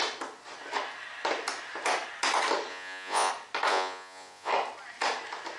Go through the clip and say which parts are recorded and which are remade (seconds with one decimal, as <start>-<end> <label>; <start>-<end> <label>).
0.0-2.7 recorded; 2.7-3.3 remade; 3.3-3.7 recorded; 3.7-4.5 remade; 4.5-5.6 recorded